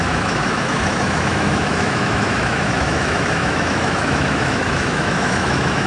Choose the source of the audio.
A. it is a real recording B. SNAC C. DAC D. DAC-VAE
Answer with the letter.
D